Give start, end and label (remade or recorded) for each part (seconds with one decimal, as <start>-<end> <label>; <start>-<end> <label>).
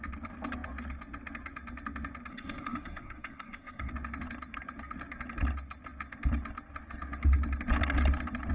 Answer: 0.0-2.3 recorded; 2.3-3.9 remade; 3.9-8.5 recorded